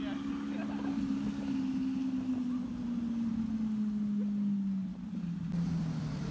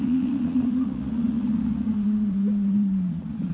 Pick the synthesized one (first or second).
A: second